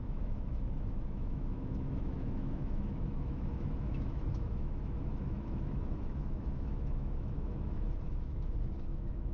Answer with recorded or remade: remade